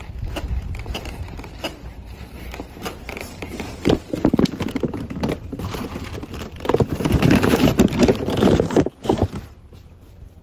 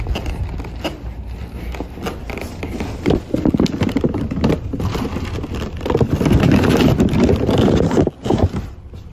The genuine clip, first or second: second